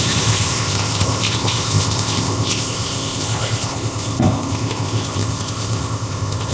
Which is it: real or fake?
fake